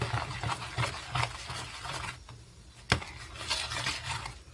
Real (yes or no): yes